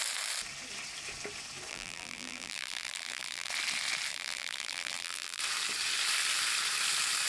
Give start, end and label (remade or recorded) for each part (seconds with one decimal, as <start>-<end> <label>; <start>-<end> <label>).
0.0-1.7 recorded; 1.7-3.5 remade; 3.5-4.1 recorded; 4.1-5.4 remade; 5.4-7.3 recorded